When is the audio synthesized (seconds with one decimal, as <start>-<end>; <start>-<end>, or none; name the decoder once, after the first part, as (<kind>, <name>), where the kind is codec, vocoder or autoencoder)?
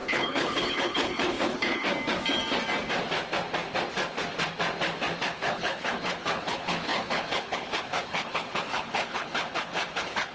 0.0-1.9 (codec, HILCodec); 5.2-10.3